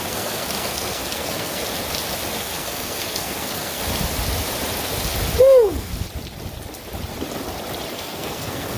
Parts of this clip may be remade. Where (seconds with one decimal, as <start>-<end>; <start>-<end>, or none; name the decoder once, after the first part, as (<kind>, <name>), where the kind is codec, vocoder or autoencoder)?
0.0-1.6 (codec, SNAC); 2.4-3.8; 5.4-5.9; 7.9-8.8